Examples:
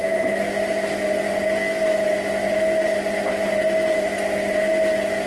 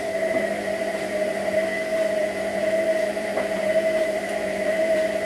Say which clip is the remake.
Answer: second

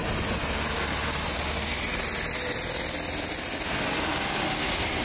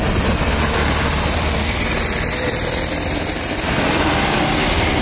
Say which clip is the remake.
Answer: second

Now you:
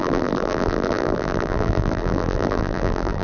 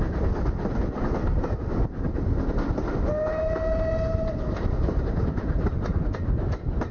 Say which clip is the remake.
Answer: first